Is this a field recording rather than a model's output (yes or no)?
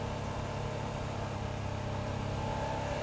yes